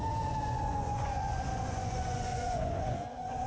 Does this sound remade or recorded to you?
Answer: remade